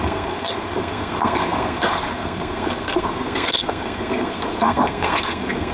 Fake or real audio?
fake